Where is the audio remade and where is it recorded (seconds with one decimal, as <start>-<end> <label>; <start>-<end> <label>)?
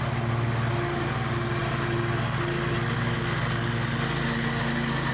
0.0-5.1 recorded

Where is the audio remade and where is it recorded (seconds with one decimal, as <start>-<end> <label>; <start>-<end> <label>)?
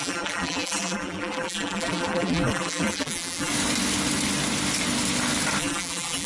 0.0-3.5 remade; 3.5-5.6 recorded; 5.6-6.3 remade